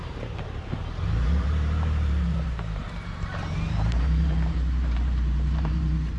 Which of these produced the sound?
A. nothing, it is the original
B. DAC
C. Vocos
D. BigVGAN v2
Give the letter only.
D